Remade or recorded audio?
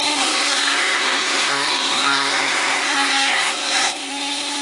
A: remade